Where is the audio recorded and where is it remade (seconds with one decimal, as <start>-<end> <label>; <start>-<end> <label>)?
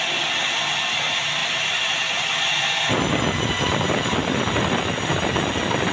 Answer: 0.0-5.9 recorded